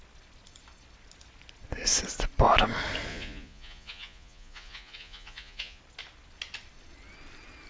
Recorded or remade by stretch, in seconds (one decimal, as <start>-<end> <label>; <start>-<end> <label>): 0.0-3.1 recorded; 3.1-5.8 remade; 5.8-7.7 recorded